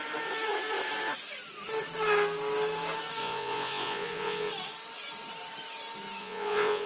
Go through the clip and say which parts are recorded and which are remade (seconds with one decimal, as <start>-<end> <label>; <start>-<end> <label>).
0.0-3.2 recorded; 3.2-4.5 remade; 4.5-6.2 recorded; 6.2-6.9 remade